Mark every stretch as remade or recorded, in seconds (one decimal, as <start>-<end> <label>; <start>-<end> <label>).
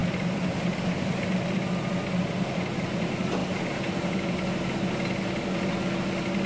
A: 0.0-2.6 remade; 2.6-3.4 recorded; 3.4-4.4 remade; 4.4-6.5 recorded